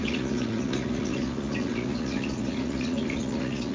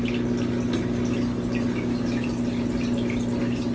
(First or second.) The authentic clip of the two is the second